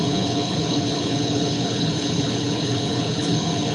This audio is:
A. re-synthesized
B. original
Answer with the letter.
A